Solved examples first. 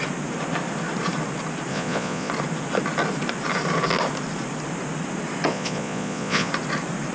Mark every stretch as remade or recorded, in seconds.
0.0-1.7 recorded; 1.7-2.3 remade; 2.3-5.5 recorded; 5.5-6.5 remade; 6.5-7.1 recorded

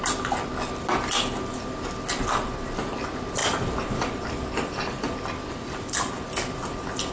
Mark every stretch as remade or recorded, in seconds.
0.0-7.1 recorded

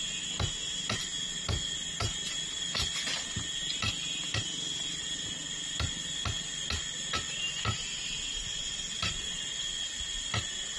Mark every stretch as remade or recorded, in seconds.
0.0-10.8 recorded

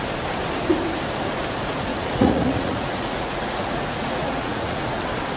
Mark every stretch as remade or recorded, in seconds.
0.0-1.9 recorded; 1.9-5.0 remade; 5.0-5.4 recorded

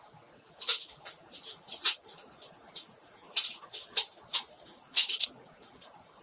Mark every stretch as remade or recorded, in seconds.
0.0-0.7 recorded; 0.7-3.6 remade; 3.6-4.7 recorded; 4.7-6.2 remade

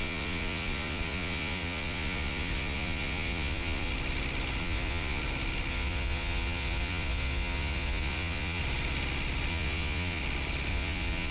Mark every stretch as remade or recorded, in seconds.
0.0-3.9 remade; 3.9-4.6 recorded; 4.6-5.2 remade; 5.2-5.7 recorded; 5.7-8.6 remade; 8.6-9.5 recorded; 9.5-10.2 remade; 10.2-10.7 recorded; 10.7-11.3 remade

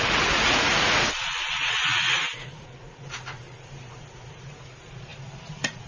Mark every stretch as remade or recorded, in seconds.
0.0-5.9 remade

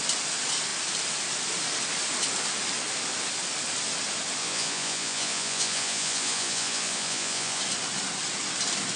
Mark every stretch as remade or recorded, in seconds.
0.0-4.4 recorded; 4.4-7.6 remade; 7.6-9.0 recorded